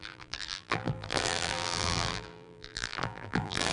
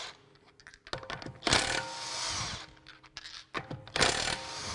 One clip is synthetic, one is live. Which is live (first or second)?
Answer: second